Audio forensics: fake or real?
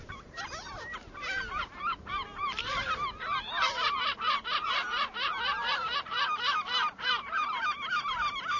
fake